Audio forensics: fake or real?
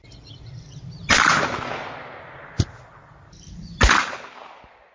real